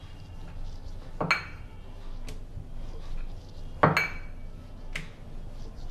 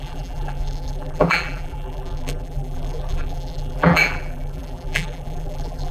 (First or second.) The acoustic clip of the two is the first